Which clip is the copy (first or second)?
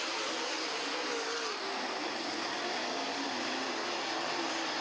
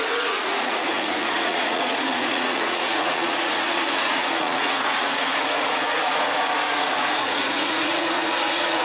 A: second